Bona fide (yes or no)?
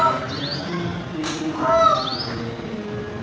yes